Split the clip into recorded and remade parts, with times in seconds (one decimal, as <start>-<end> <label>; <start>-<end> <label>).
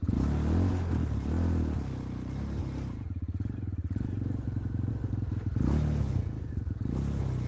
0.0-2.6 recorded; 2.6-4.9 remade; 4.9-7.5 recorded